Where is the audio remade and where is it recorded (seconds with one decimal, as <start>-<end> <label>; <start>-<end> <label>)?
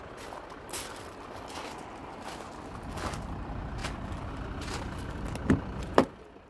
0.0-6.5 recorded